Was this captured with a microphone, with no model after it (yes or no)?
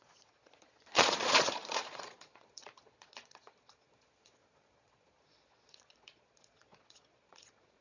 no